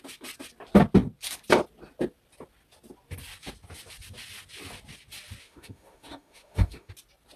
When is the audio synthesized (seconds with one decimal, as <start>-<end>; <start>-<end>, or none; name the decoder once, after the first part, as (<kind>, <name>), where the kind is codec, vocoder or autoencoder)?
5.4-6.9 (autoencoder, DAC-VAE)

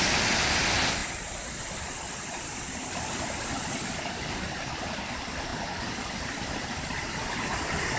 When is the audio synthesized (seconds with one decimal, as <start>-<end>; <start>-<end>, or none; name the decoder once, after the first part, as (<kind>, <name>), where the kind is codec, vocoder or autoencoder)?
none

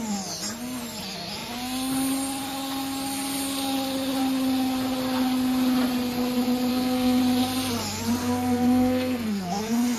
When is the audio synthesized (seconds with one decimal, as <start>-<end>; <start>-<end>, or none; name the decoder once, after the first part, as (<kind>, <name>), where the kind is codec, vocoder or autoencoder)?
6.7-7.2 (codec, SNAC); 8.2-10.0

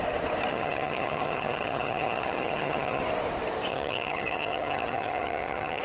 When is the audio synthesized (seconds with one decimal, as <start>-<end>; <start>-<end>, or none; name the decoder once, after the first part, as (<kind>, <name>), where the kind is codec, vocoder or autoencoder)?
0.5-3.0 (vocoder, HiFi-GAN); 3.7-5.8

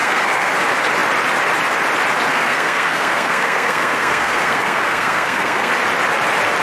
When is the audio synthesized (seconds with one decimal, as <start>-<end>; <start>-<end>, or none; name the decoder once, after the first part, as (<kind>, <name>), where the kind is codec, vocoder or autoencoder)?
0.0-0.5 (codec, SNAC); 2.3-5.7

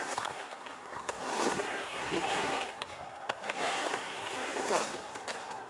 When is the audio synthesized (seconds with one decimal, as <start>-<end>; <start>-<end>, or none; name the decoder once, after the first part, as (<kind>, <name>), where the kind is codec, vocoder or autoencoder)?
0.0-5.7 (codec, SNAC)

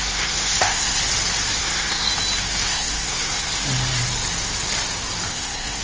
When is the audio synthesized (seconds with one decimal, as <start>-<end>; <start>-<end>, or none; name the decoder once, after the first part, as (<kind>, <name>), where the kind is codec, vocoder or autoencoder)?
0.0-1.0 (codec, SNAC); 1.6-2.1; 2.7-3.5; 5.3-5.8